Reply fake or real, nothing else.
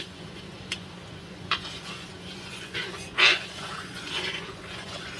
fake